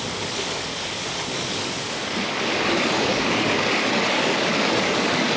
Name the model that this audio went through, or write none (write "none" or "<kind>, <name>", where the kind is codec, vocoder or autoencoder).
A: codec, DAC